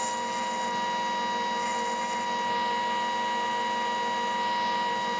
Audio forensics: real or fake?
real